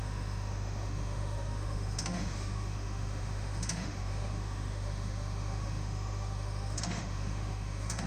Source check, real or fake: fake